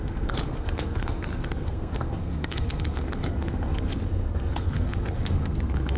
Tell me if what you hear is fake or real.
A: fake